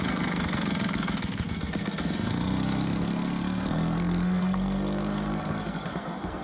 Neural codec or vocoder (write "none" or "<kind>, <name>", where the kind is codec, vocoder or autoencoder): codec, SNAC